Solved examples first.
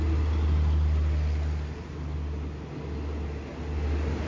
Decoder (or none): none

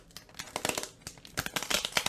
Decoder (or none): none